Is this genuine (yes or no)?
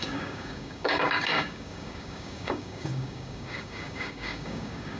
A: no